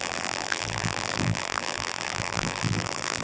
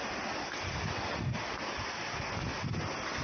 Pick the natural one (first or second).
second